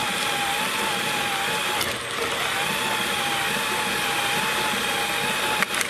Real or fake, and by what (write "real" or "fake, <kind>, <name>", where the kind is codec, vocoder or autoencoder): real